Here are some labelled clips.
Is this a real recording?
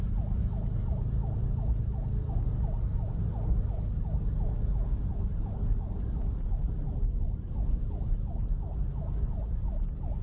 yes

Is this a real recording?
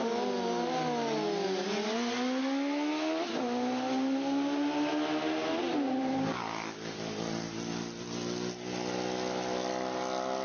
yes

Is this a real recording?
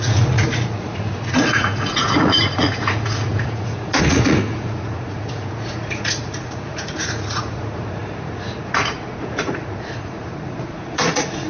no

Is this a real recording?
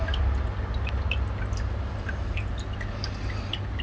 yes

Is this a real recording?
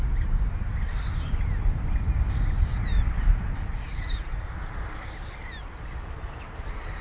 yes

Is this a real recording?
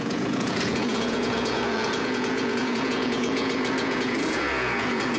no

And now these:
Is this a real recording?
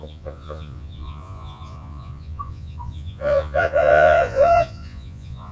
no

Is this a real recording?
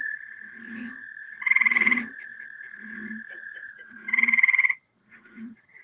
no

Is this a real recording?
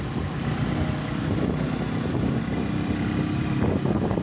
yes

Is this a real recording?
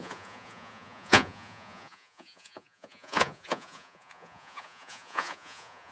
no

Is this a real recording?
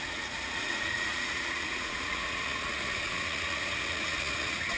no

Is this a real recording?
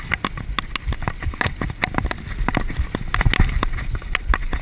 yes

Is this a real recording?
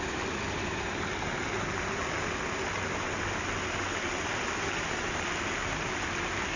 yes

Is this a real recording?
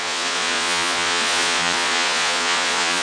no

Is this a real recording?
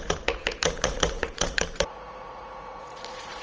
no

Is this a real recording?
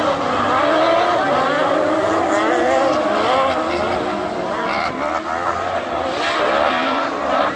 yes